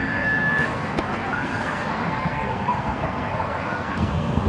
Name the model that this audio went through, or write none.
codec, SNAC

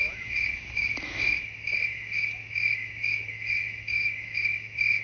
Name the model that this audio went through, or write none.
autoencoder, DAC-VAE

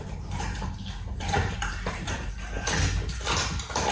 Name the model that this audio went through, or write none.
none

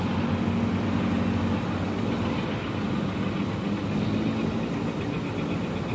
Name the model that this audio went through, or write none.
none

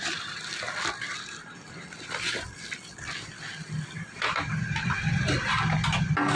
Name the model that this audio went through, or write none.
vocoder, BigVGAN v2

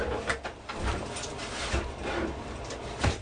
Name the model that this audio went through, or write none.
none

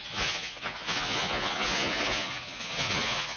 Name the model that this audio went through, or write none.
vocoder, Vocos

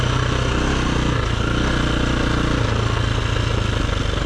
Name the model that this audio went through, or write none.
none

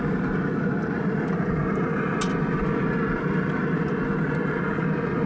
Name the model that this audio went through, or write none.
none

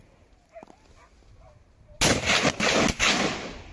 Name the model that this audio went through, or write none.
none